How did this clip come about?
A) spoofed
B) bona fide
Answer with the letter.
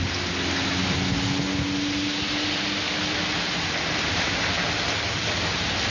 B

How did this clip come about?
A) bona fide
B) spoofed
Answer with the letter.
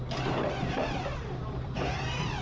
B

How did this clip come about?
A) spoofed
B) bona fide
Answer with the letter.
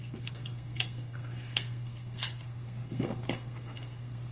A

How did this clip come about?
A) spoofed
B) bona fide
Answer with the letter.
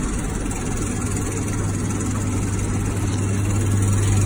B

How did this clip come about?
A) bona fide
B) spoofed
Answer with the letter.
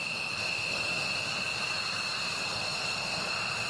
A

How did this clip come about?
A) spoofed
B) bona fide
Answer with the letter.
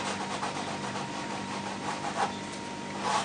B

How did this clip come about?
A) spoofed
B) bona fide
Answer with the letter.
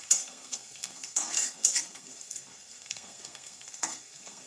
A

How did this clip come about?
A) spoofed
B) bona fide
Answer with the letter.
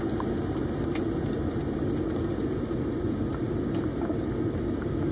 B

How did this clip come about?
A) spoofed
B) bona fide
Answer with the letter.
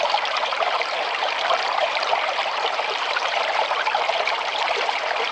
A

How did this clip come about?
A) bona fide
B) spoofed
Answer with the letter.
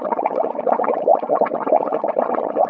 B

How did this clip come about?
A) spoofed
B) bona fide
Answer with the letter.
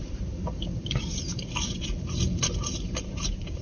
A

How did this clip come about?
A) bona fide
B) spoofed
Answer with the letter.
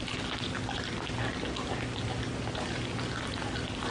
A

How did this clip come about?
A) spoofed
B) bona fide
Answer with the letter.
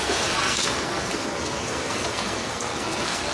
A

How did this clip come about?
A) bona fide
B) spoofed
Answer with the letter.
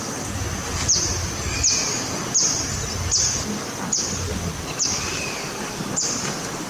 A